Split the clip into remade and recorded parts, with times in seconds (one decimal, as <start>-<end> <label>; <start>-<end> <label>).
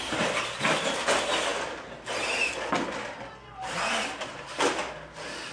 0.0-5.5 recorded